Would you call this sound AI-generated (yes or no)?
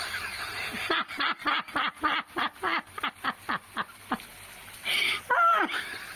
no